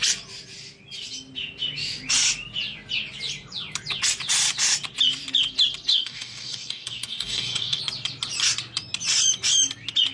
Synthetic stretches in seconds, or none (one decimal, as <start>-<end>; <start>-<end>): 5.9-7.8